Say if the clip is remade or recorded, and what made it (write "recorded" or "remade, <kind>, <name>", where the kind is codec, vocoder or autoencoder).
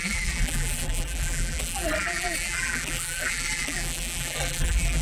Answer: remade, vocoder, BigVGAN v2